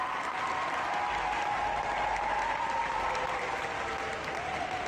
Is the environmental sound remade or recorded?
recorded